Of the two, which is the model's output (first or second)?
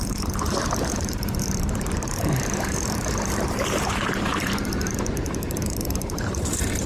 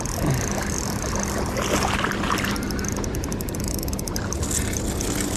first